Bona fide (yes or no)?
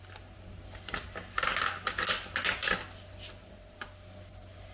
yes